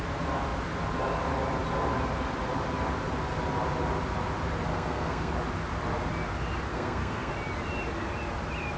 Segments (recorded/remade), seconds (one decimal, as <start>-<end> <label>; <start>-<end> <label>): 0.0-4.7 recorded; 4.7-5.3 remade; 5.3-6.7 recorded; 6.7-7.3 remade; 7.3-8.8 recorded

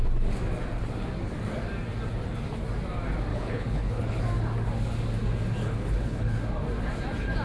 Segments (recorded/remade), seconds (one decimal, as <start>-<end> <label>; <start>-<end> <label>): 0.0-3.3 recorded; 3.3-4.2 remade; 4.2-5.6 recorded; 5.6-6.4 remade; 6.4-7.4 recorded